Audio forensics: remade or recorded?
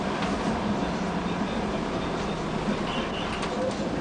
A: recorded